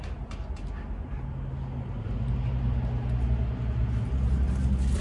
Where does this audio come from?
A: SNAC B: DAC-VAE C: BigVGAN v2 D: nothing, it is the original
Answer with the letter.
D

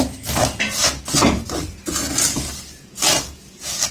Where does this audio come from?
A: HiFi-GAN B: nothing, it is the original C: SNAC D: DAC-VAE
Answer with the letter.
B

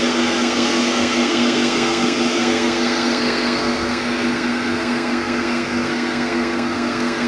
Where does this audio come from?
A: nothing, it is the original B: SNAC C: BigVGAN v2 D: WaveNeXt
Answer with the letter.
B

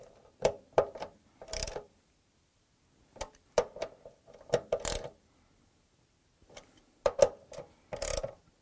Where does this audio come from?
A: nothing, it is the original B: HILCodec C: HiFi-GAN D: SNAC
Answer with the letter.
A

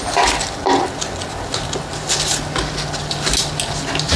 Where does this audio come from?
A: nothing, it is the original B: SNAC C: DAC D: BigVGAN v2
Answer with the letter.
A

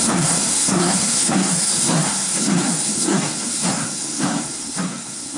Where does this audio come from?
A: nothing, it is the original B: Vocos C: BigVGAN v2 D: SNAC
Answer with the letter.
D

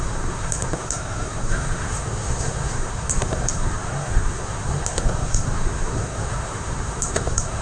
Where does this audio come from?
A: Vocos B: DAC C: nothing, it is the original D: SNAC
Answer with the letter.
D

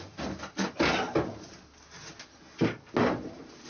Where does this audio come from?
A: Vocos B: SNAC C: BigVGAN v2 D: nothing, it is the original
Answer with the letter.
D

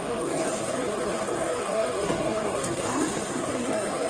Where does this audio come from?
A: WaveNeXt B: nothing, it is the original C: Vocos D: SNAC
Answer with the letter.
D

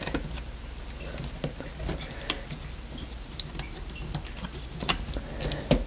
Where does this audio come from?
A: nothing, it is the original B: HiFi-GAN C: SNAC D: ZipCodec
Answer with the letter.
A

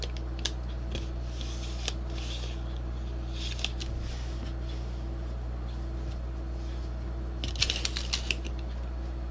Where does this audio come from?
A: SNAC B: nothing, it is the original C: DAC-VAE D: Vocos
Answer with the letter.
B